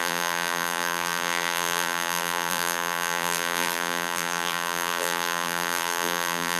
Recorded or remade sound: remade